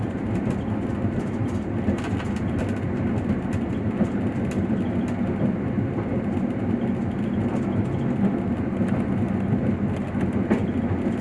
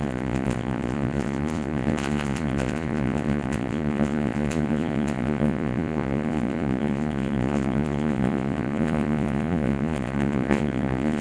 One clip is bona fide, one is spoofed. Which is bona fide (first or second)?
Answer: first